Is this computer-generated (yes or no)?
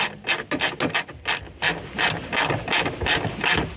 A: no